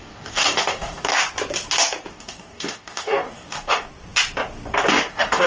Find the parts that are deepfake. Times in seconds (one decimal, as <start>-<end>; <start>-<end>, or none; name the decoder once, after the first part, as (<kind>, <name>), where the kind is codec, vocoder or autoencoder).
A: 0.0-1.1 (codec, DAC); 2.1-3.9; 5.1-5.5